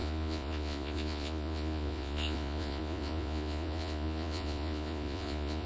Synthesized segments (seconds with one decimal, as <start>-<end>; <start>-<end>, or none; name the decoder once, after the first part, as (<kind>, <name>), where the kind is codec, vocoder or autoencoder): 0.0-5.7 (vocoder, Vocos)